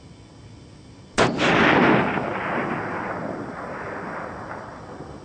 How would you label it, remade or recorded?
recorded